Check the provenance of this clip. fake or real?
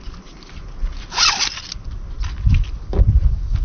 real